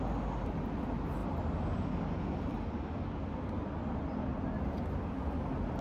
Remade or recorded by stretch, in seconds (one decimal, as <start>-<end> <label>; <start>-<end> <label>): 0.0-5.8 recorded